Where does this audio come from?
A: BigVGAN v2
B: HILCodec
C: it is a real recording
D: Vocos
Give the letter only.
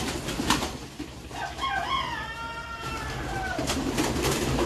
C